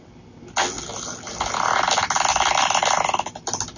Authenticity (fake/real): real